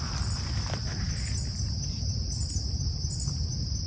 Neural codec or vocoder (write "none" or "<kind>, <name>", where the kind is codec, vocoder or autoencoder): none